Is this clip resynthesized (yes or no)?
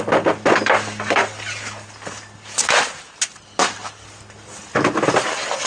no